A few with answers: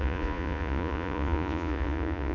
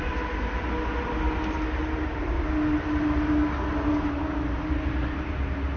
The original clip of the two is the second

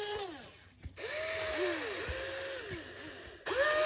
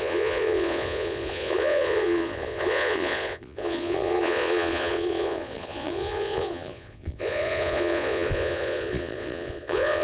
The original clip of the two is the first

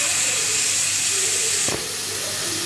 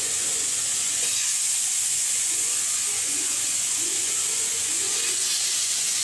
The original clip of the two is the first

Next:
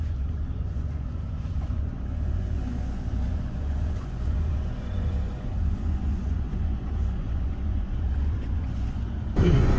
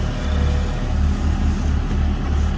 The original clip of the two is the second